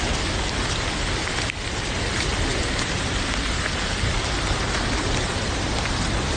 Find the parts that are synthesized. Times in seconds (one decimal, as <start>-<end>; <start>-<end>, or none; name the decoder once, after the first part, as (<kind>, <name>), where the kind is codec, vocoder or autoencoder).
none